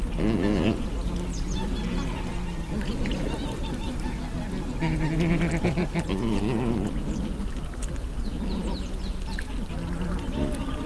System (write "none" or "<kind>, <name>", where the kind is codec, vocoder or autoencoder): none